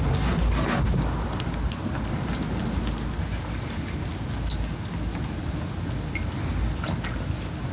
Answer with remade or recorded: recorded